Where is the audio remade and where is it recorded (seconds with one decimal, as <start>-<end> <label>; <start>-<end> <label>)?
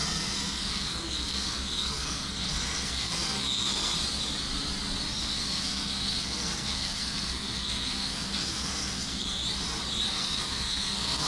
0.0-3.9 remade; 3.9-5.2 recorded; 5.2-9.4 remade; 9.4-10.1 recorded; 10.1-11.3 remade